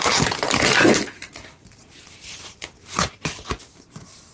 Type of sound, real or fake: real